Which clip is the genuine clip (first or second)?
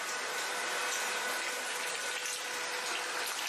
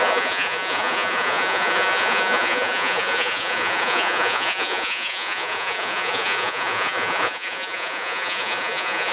first